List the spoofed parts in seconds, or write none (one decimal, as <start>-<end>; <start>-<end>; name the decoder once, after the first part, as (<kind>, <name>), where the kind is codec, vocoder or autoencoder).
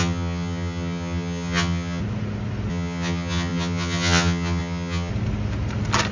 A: 0.0-2.0 (vocoder, HiFi-GAN); 2.7-5.1